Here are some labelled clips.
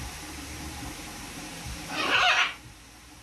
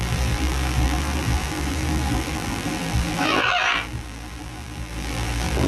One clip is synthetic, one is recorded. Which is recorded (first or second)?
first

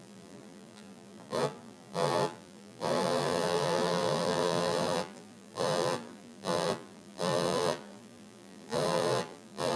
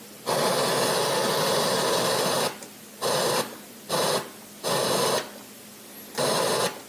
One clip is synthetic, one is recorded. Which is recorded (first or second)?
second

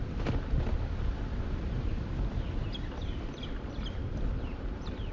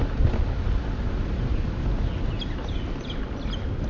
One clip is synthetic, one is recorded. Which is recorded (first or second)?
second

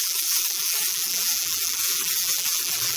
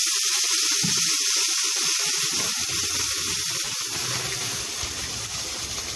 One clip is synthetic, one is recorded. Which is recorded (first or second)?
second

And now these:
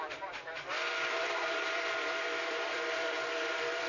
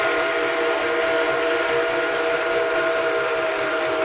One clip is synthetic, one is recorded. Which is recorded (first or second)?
second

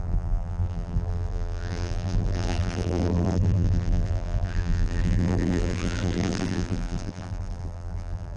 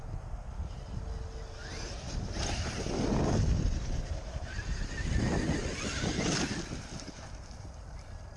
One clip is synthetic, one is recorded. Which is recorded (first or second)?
second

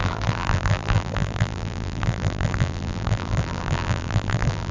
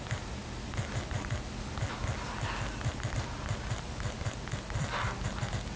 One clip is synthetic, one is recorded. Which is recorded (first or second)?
second